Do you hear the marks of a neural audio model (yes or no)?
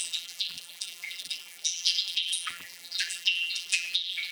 yes